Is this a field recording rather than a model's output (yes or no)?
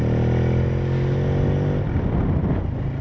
yes